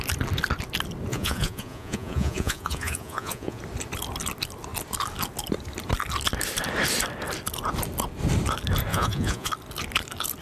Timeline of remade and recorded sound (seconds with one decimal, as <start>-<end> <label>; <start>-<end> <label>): 0.0-1.1 recorded; 1.1-3.6 remade; 3.6-8.9 recorded; 8.9-9.5 remade; 9.5-10.4 recorded